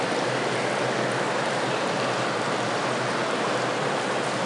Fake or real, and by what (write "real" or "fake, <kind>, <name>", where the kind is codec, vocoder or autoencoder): real